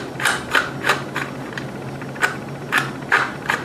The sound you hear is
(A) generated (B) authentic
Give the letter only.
B